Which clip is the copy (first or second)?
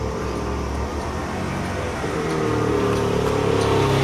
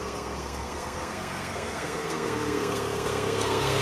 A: second